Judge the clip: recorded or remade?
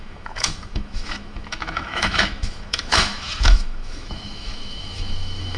remade